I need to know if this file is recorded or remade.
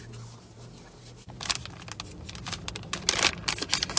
recorded